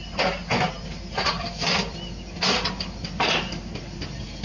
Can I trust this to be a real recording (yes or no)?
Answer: yes